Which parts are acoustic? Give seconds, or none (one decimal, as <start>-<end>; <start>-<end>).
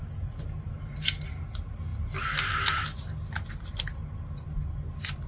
0.0-5.3